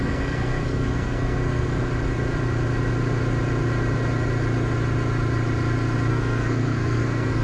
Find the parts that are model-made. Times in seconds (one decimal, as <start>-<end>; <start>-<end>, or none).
0.0-1.7; 6.1-7.4